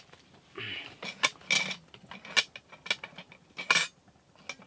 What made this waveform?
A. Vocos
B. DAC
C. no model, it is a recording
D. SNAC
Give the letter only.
C